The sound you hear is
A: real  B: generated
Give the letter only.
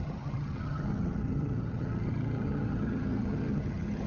B